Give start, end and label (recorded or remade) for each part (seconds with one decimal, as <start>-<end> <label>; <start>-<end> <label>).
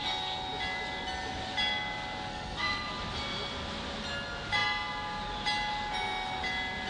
0.0-2.3 recorded; 2.3-2.9 remade; 2.9-6.9 recorded